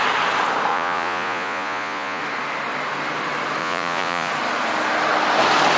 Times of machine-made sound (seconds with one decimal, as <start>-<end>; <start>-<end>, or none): 0.7-2.2; 3.6-4.3